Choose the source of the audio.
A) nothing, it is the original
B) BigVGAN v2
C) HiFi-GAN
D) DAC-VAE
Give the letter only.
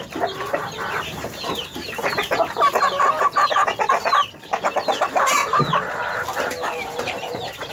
B